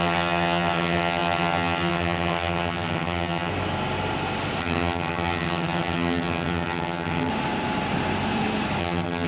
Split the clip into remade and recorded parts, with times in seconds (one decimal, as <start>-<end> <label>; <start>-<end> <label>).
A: 0.0-3.5 remade; 3.5-4.6 recorded; 4.6-7.3 remade; 7.3-8.8 recorded; 8.8-9.3 remade